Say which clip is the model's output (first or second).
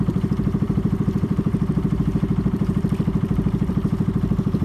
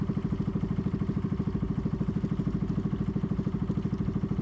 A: first